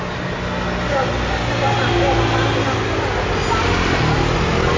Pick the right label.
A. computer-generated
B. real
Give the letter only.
B